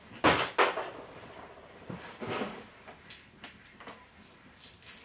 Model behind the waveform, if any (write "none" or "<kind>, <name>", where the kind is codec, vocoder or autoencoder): none